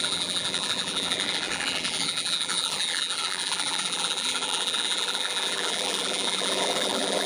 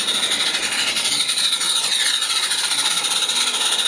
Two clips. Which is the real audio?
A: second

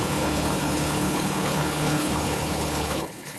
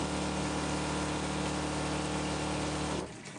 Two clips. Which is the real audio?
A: second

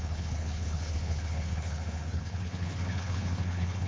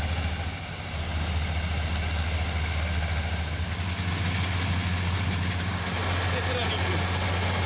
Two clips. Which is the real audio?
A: second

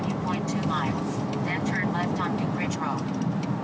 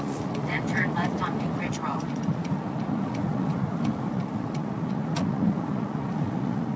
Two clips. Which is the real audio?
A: first